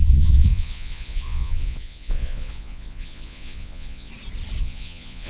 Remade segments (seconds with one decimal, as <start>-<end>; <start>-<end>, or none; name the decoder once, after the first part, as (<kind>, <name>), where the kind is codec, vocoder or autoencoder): 0.0-4.1 (vocoder, Vocos); 4.6-5.3